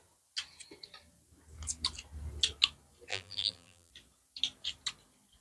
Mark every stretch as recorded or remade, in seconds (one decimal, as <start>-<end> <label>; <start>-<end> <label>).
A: 0.0-3.1 recorded; 3.1-3.9 remade; 3.9-5.4 recorded